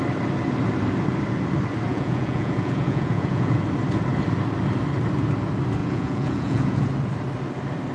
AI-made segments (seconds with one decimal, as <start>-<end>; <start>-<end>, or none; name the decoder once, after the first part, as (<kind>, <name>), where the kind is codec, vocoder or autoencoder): 1.9-3.6 (vocoder, Vocos); 5.8-6.9